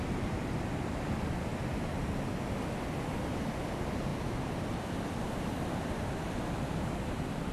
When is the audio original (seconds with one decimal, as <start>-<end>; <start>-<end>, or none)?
1.5-3.1